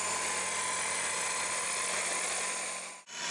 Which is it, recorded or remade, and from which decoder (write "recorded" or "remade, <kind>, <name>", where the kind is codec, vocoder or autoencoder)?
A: recorded